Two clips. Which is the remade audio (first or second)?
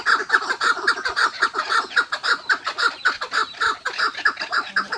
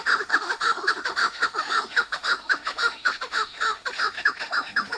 second